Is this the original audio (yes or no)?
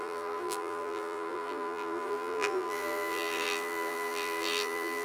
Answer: no